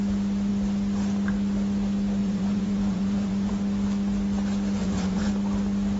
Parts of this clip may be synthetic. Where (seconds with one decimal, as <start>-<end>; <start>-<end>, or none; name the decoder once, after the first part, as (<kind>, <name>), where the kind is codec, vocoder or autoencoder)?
2.2-3.5 (vocoder, Vocos); 4.8-5.3